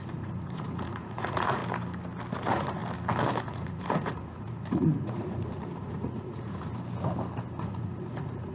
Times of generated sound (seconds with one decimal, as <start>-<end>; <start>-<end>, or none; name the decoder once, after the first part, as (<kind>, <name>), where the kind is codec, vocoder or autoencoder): 0.0-1.6 (vocoder, Vocos); 2.4-2.8; 3.4-6.7; 7.6-8.5